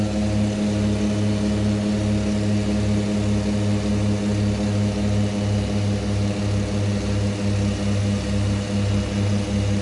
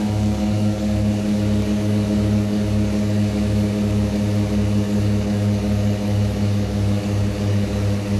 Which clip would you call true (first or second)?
first